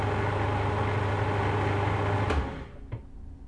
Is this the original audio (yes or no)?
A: yes